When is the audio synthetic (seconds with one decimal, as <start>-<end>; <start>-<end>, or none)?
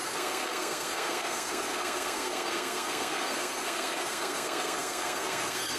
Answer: 0.0-5.8